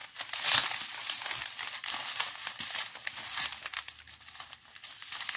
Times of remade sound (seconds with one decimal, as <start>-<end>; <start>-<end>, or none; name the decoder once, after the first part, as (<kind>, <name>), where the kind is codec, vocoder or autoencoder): none

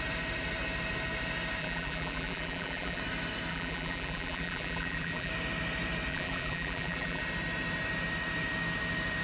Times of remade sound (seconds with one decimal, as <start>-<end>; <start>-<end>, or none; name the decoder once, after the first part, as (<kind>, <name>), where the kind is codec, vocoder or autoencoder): 1.6-3.0 (vocoder, BigVGAN v2); 3.5-5.3; 6.1-7.2

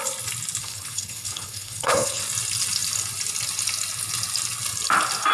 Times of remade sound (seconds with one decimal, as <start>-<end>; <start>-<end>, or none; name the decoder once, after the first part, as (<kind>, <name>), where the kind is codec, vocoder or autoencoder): 0.6-2.2 (codec, HILCodec)

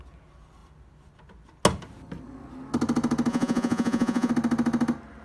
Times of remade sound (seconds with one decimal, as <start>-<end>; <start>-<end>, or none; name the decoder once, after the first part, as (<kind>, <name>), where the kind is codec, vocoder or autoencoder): 3.3-4.3 (vocoder, Vocos)